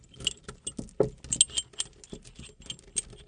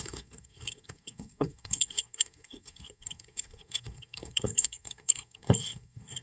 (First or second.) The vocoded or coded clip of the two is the second